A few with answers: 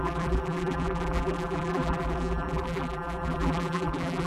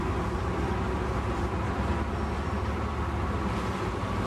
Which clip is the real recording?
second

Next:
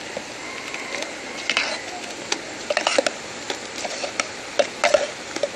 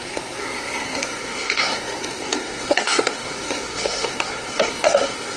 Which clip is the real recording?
first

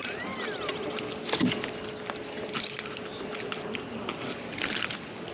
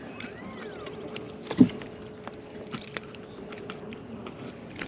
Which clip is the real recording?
first